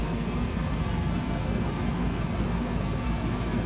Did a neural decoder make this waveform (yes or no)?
yes